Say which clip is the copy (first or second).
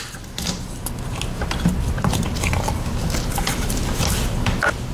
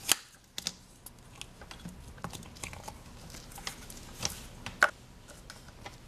first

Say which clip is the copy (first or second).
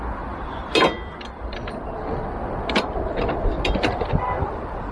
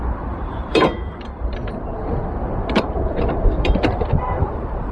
second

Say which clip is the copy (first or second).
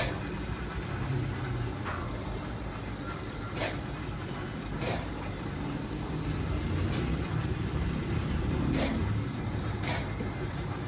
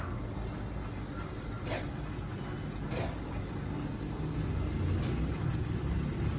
first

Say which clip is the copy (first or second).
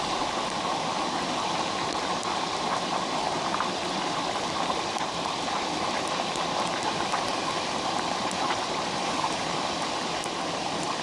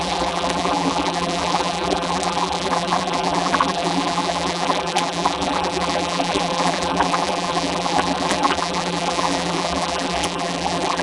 second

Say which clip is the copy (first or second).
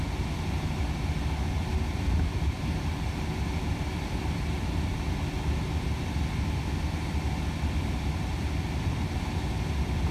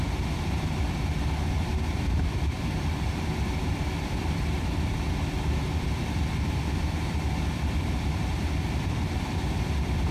second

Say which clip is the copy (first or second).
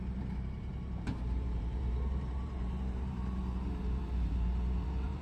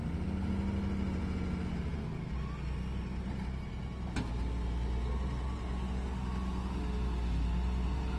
first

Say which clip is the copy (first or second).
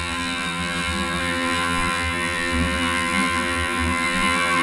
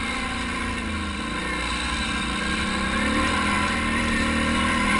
first